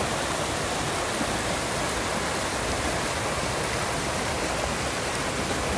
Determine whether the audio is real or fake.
real